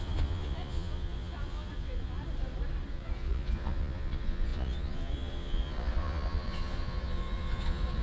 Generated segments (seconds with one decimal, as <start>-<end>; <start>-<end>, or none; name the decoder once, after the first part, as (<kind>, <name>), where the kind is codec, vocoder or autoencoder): 0.0-2.2 (vocoder, Vocos); 2.9-8.0